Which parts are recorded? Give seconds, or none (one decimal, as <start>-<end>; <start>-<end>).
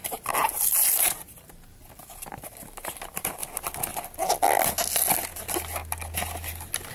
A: 3.4-6.9